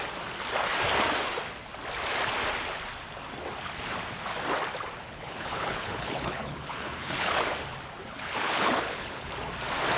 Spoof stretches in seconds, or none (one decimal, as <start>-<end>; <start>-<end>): 5.1-7.4; 8.0-9.3